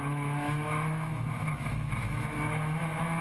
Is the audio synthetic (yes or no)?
yes